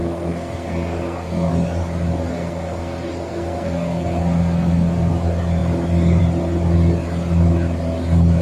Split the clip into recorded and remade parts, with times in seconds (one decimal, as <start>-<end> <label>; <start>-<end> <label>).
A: 0.0-1.5 remade; 1.5-2.3 recorded; 2.3-5.1 remade; 5.1-8.4 recorded